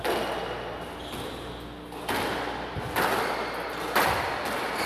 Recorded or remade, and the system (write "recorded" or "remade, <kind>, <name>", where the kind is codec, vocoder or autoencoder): recorded